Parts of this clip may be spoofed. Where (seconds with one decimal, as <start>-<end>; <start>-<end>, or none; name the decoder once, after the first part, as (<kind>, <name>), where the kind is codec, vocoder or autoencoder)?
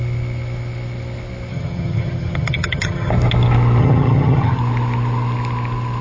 1.5-3.1 (vocoder, HiFi-GAN); 3.8-4.6